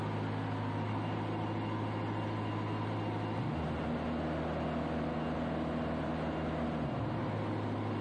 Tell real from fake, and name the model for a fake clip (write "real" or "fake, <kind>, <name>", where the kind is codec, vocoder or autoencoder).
real